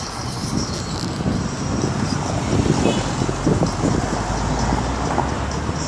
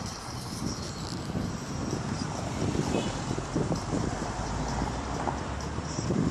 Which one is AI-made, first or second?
second